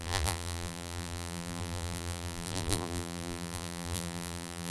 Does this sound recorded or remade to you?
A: remade